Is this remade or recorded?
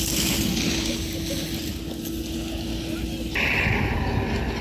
recorded